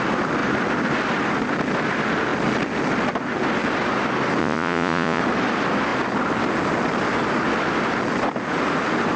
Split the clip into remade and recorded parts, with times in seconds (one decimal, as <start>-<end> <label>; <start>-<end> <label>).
0.0-4.4 recorded; 4.4-5.2 remade; 5.2-9.2 recorded